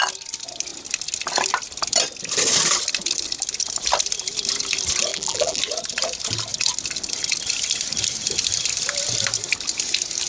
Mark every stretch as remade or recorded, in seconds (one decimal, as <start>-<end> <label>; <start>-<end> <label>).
0.0-5.1 recorded; 5.1-5.6 remade; 5.6-10.3 recorded